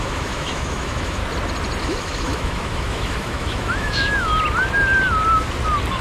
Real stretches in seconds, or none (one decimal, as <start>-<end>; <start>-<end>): 1.2-1.8; 4.3-6.0